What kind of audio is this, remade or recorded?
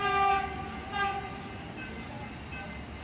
recorded